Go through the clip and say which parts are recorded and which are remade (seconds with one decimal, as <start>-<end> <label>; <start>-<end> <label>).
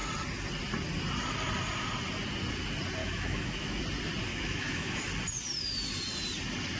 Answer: 0.0-3.0 recorded; 3.0-3.8 remade; 3.8-4.3 recorded; 4.3-5.0 remade; 5.0-6.8 recorded